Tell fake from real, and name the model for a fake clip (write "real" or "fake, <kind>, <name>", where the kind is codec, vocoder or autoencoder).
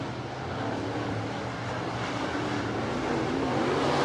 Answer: real